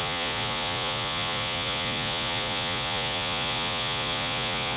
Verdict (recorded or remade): remade